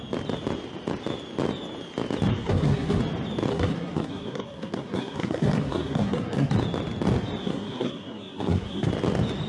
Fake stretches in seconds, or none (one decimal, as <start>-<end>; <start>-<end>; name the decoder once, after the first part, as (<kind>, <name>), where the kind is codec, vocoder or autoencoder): 2.3-3.0 (codec, SNAC); 3.5-6.5; 7.4-8.9